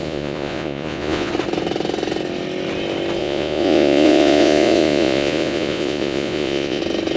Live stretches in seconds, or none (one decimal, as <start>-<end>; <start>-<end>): 1.3-3.2; 6.8-7.2